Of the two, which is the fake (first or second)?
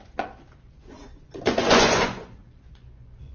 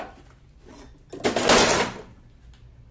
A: first